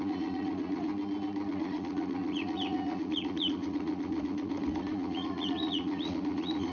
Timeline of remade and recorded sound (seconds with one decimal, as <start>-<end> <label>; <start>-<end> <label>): 0.0-0.9 remade; 0.9-1.5 recorded; 1.5-6.7 remade